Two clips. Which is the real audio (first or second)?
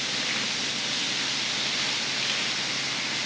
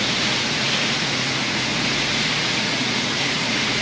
first